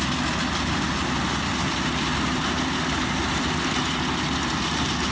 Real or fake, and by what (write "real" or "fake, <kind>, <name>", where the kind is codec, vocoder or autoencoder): real